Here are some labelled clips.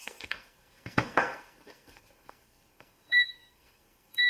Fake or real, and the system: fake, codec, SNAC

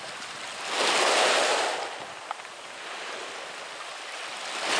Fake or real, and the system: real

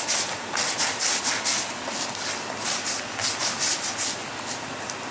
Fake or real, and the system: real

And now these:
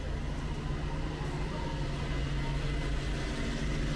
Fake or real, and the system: real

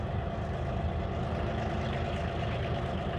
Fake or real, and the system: real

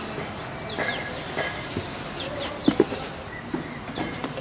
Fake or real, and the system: real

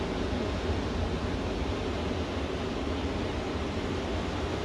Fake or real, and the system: real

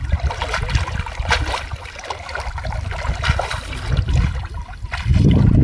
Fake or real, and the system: real